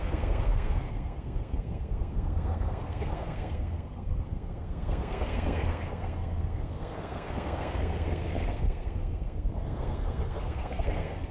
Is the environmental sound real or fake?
fake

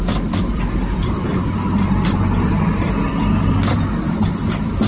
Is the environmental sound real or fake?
fake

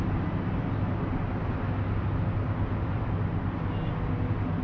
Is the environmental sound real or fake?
real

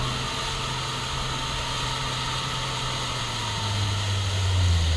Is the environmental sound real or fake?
real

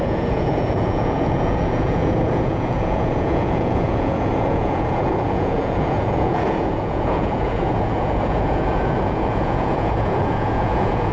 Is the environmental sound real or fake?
fake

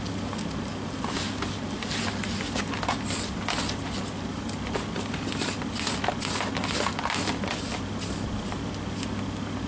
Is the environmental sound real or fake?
real